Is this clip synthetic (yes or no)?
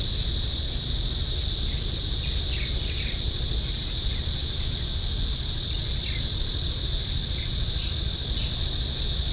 no